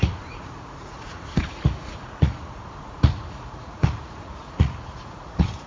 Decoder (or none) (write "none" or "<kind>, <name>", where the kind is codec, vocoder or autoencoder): vocoder, Vocos